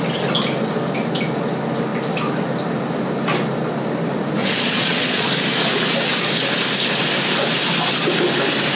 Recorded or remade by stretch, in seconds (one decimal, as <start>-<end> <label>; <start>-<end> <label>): 0.0-4.4 recorded; 4.4-5.3 remade; 5.3-8.8 recorded